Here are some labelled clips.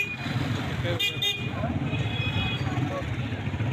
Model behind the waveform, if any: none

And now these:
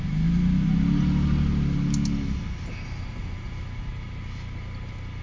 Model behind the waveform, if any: none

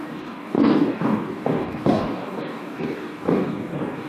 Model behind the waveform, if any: codec, DAC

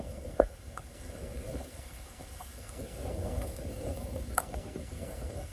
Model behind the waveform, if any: codec, SNAC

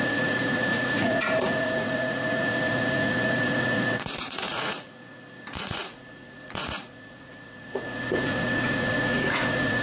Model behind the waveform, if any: vocoder, Vocos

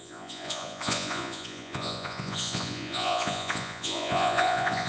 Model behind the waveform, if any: vocoder, Vocos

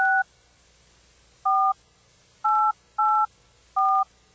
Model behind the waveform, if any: none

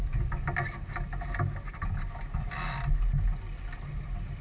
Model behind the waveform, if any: none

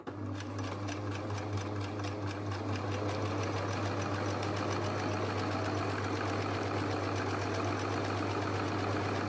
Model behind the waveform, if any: none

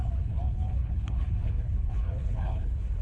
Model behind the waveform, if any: codec, HILCodec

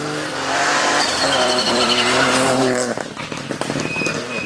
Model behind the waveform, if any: vocoder, BigVGAN v2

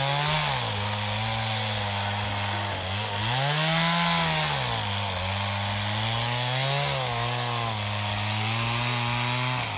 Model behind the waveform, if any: none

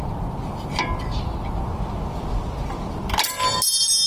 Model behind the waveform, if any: none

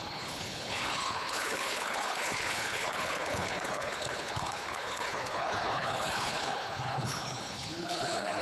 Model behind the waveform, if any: codec, HILCodec